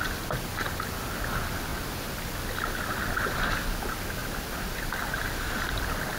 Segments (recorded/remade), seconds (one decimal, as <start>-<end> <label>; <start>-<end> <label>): 0.0-4.2 recorded; 4.2-5.8 remade; 5.8-6.2 recorded